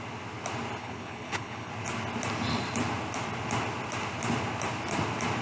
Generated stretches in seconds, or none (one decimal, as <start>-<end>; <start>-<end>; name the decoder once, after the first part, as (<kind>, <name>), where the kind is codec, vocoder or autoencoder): 0.8-1.7 (codec, HILCodec)